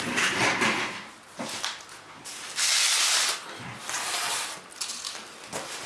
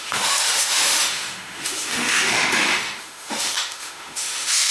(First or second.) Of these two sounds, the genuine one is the first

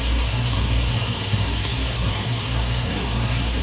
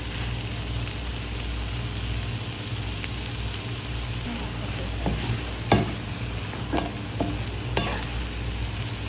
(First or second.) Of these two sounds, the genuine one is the second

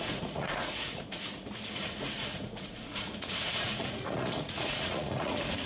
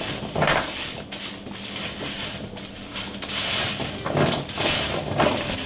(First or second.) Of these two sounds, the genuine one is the second